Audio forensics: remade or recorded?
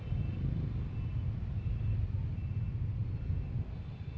recorded